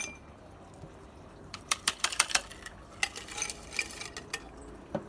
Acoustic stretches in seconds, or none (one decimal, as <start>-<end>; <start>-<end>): 0.0-1.0; 2.4-5.1